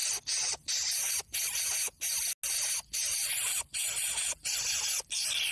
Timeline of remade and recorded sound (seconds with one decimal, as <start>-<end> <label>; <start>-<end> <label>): 0.0-3.3 recorded; 3.3-3.8 remade; 3.8-4.4 recorded; 4.4-5.5 remade